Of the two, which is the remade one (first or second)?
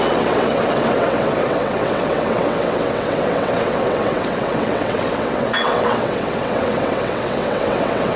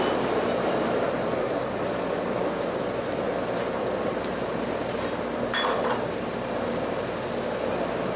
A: first